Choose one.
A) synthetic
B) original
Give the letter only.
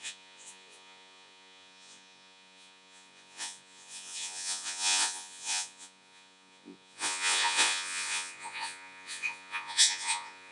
A